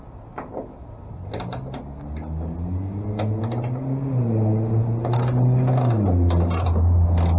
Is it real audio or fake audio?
real